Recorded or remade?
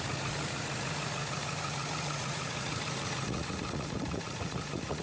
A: remade